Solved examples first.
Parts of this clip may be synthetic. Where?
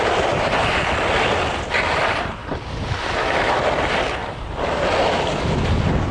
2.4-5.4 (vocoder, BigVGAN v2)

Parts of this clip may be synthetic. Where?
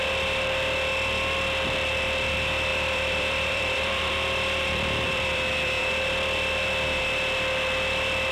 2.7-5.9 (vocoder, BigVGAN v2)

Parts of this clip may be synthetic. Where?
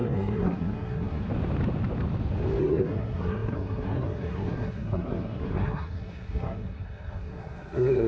0.0-1.3 (codec, SNAC); 2.6-8.1